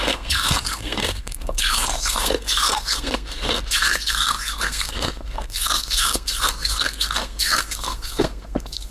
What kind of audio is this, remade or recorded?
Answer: remade